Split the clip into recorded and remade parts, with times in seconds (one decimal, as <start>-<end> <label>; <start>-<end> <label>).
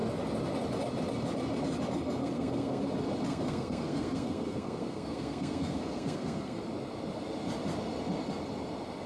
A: 0.0-2.2 recorded; 2.2-2.8 remade; 2.8-3.3 recorded; 3.3-6.6 remade; 6.6-9.1 recorded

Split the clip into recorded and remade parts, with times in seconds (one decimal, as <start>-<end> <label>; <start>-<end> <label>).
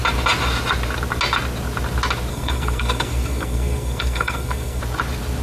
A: 0.0-2.3 recorded; 2.3-4.8 remade; 4.8-5.4 recorded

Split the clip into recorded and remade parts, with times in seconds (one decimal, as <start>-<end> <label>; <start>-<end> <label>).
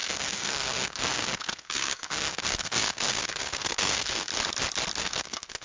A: 0.0-4.3 remade; 4.3-5.0 recorded; 5.0-5.6 remade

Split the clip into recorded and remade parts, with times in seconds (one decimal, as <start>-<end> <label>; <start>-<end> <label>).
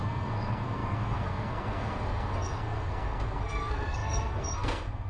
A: 0.0-5.1 remade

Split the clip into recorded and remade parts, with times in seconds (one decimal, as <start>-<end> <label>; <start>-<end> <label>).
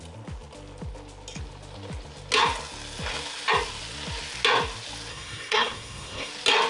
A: 0.0-5.1 recorded; 5.1-6.3 remade; 6.3-6.7 recorded